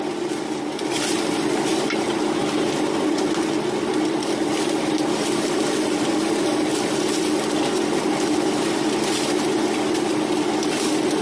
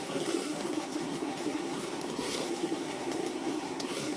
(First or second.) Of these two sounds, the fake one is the second